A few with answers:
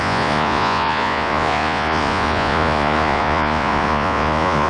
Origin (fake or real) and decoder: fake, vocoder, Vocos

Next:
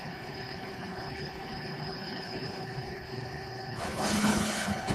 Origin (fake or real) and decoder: fake, codec, HILCodec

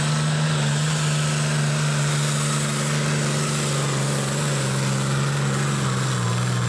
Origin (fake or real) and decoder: real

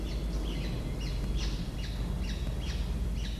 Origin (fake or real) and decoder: real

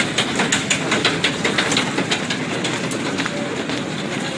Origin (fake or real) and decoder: real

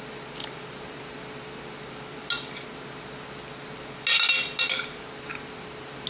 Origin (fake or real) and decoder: real